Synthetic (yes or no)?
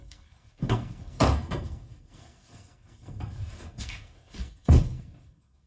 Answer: yes